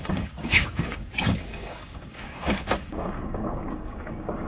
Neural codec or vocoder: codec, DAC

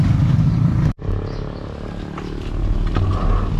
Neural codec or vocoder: none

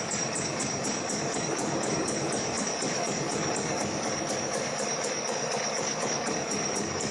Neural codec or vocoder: codec, DAC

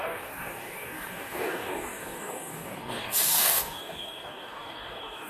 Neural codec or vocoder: codec, DAC